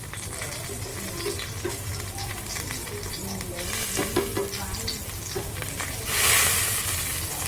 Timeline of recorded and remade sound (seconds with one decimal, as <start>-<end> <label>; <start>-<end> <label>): 0.0-0.9 recorded; 0.9-1.5 remade; 1.5-7.5 recorded